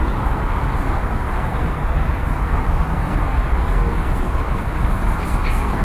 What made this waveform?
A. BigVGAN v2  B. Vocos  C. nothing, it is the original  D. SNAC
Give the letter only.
D